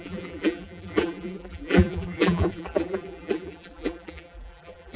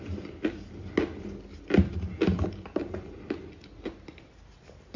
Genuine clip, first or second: second